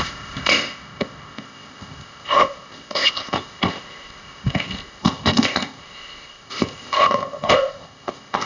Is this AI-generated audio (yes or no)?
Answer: yes